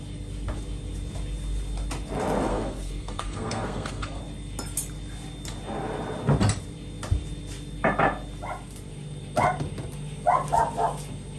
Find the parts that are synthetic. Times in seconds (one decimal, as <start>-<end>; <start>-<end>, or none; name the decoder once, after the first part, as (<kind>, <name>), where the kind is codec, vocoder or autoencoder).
2.5-4.2 (codec, SNAC)

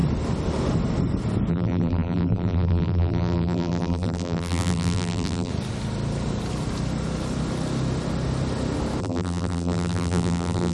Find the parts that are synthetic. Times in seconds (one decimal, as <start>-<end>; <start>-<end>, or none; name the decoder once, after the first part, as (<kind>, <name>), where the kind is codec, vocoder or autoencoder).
1.5-5.5 (vocoder, BigVGAN v2); 9.0-10.7

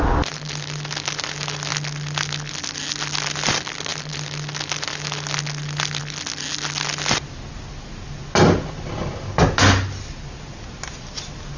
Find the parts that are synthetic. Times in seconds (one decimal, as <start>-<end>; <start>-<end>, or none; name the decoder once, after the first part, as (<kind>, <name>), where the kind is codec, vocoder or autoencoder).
none

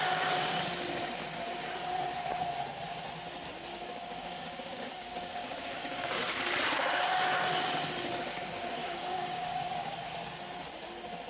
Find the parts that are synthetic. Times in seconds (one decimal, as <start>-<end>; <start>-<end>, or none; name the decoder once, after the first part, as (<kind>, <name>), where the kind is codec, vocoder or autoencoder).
3.7-6.4 (codec, DAC); 8.8-10.0